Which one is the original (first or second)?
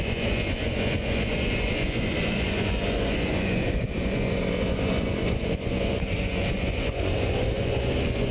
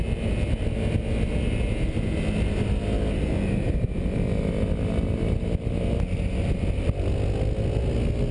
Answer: second